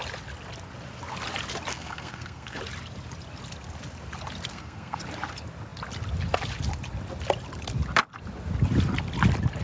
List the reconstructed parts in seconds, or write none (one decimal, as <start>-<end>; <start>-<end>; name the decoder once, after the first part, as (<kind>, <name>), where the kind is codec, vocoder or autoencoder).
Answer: 1.7-2.6 (codec, SNAC); 4.5-5.0